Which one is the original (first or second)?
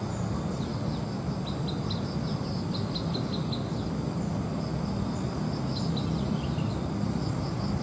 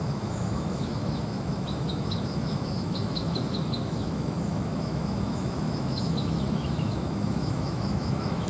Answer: first